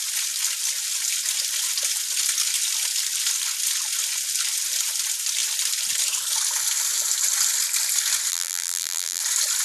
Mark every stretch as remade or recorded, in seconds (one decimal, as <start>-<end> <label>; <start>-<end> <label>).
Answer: 0.0-8.3 recorded; 8.3-9.2 remade; 9.2-9.6 recorded